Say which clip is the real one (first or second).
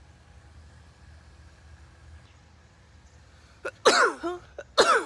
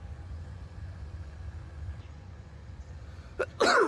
first